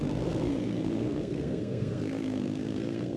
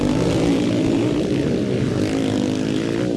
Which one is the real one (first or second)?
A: second